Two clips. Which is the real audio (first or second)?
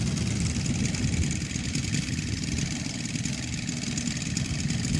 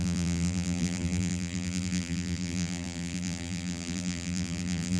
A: first